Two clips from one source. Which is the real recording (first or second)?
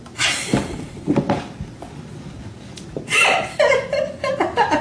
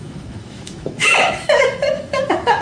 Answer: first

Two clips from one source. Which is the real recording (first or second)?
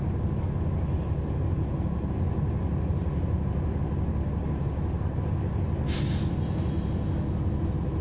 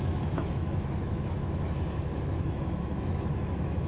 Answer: first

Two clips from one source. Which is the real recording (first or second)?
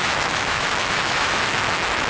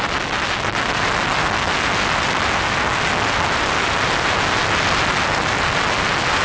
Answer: second